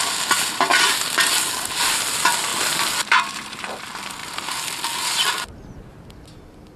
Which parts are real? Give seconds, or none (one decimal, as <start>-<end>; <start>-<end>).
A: 0.0-6.8